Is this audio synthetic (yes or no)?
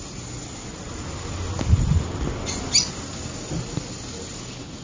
no